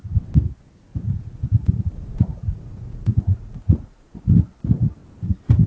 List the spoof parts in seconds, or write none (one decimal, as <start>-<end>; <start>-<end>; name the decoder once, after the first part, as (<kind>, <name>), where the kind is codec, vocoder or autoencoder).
0.9-4.3 (vocoder, Vocos)